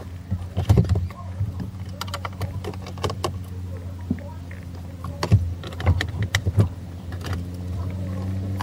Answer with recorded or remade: recorded